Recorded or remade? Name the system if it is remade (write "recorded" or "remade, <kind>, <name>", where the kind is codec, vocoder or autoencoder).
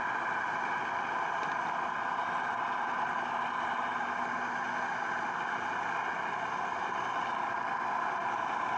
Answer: recorded